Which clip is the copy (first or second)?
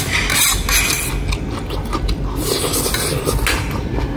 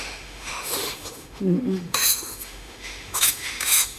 second